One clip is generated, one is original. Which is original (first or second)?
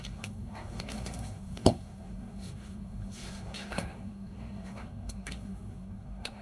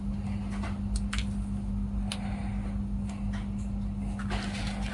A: second